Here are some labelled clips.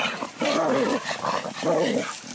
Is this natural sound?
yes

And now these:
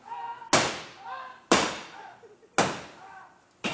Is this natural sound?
yes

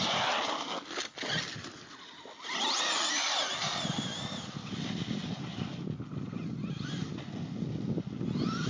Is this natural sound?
yes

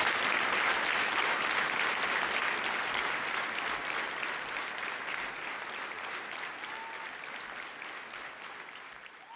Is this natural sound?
yes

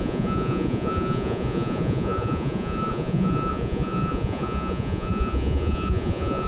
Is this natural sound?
no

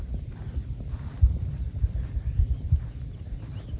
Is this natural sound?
yes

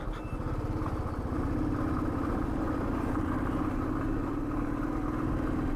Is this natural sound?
yes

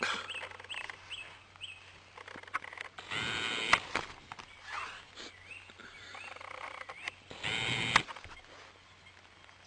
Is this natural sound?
yes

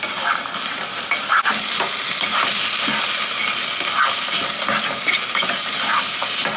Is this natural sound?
yes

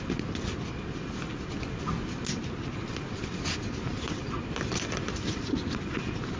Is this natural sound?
yes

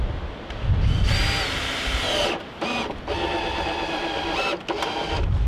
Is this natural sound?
yes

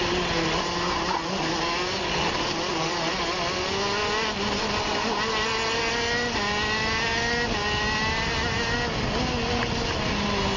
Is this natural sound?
yes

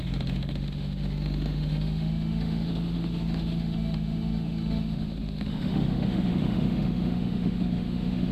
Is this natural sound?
no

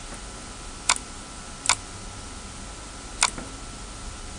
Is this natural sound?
yes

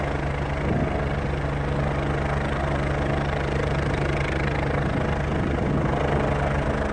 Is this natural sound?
yes